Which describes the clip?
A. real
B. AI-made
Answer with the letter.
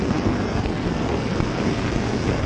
B